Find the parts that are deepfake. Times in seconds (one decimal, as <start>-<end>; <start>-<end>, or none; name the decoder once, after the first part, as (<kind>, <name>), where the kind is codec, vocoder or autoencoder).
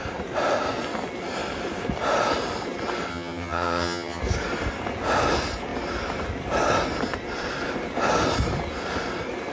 3.1-4.2 (vocoder, HiFi-GAN)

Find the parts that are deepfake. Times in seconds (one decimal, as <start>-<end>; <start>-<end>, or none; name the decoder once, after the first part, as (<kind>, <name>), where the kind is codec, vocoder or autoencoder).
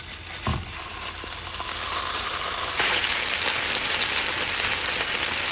none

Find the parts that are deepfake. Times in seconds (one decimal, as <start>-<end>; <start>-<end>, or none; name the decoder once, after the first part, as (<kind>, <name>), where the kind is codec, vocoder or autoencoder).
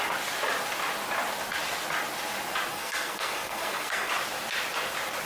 2.7-4.1 (codec, SNAC)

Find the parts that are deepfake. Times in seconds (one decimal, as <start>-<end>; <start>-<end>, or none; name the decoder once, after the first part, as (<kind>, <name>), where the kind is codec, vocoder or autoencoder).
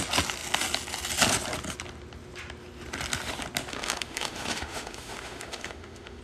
3.7-6.2 (autoencoder, DAC-VAE)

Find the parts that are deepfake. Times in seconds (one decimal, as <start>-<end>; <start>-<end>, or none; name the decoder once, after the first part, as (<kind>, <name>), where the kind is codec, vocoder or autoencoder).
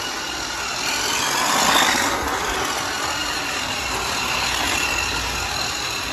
3.2-5.0 (vocoder, BigVGAN v2)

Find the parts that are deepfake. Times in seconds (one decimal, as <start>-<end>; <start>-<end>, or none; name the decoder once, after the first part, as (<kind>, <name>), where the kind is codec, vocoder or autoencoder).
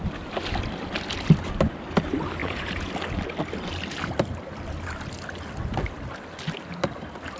2.4-2.9 (vocoder, Vocos)